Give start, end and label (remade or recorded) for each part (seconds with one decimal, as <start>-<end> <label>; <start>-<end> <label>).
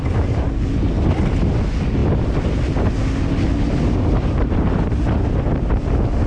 0.0-6.3 recorded